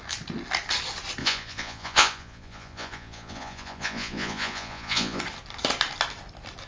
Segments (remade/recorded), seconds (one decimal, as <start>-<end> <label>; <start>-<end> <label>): 0.0-1.2 recorded; 1.2-5.2 remade; 5.2-6.7 recorded